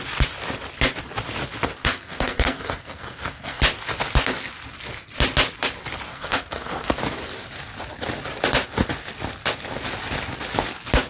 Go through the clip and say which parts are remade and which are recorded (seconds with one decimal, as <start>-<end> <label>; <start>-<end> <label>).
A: 0.0-1.8 recorded; 1.8-3.6 remade; 3.6-6.1 recorded; 6.1-7.0 remade; 7.0-11.1 recorded